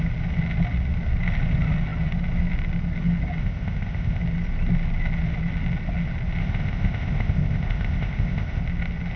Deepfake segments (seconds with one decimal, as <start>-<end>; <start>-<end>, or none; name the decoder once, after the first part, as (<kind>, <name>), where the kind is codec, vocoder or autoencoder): 3.4-4.2 (codec, ZipCodec); 6.4-8.6